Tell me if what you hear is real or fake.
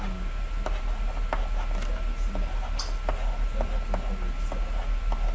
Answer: real